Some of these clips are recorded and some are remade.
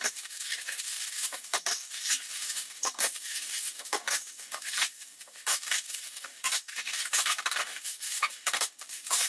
remade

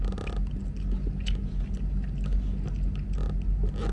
recorded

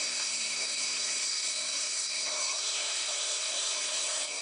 remade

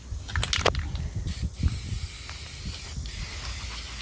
recorded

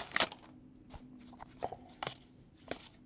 recorded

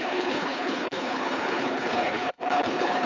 remade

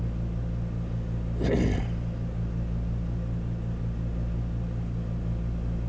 recorded